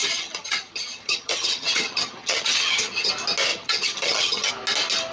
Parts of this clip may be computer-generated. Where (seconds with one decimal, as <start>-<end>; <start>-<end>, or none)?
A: 0.0-3.1; 3.5-4.5